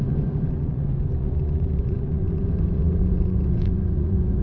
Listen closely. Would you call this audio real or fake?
fake